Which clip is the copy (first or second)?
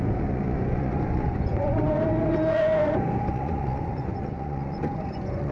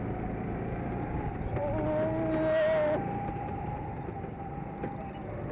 first